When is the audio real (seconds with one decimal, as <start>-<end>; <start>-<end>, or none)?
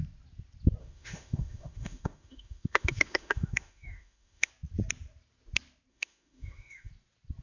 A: 0.0-0.8; 4.5-5.9; 6.9-7.4